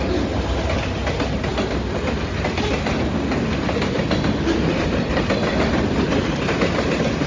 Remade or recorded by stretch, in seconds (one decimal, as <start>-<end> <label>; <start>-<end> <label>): 0.0-7.3 recorded